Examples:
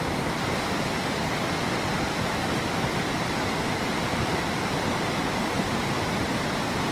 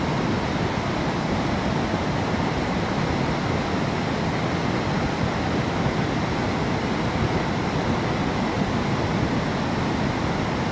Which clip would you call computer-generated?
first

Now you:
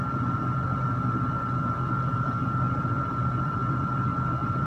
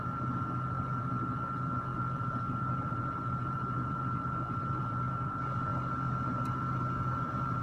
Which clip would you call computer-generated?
first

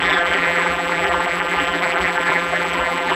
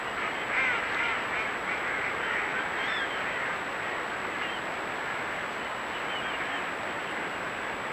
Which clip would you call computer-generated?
first